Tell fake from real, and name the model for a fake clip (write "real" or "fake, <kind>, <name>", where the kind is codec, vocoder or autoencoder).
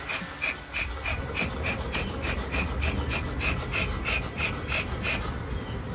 real